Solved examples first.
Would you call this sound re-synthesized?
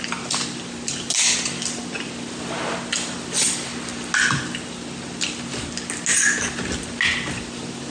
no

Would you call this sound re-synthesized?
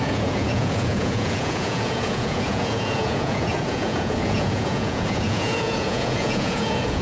yes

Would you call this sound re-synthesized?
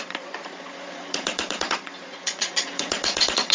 yes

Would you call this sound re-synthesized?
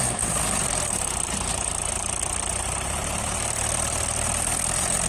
yes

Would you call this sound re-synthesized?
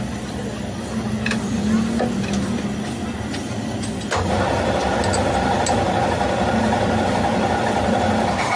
no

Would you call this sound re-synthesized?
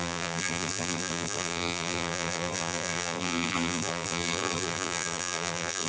yes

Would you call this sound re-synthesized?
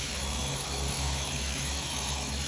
yes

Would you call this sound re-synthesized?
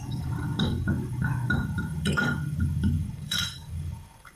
yes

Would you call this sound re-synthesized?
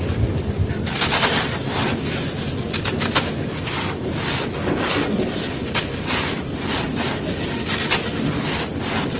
no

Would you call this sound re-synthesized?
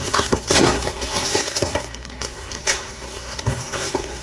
yes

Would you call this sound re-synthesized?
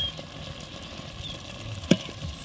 no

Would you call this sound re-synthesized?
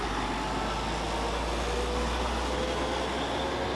no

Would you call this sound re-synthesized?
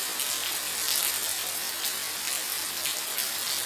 no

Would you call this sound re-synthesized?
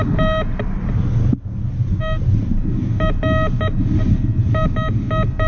no